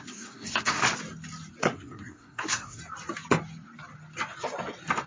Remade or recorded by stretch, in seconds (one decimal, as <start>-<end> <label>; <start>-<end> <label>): 0.0-0.8 remade; 0.8-1.6 recorded; 1.6-2.8 remade; 2.8-5.1 recorded